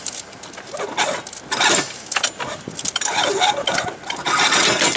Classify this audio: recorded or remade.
recorded